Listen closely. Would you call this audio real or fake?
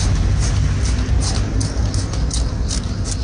real